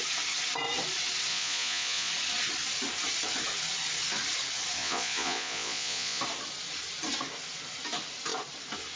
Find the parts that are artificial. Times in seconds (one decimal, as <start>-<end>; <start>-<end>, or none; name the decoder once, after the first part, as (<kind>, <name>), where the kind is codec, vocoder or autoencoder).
1.3-2.1 (vocoder, Vocos); 4.8-6.2